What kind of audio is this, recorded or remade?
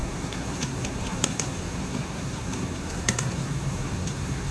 remade